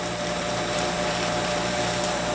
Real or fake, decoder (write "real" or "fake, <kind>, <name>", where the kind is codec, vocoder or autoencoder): fake, vocoder, BigVGAN v2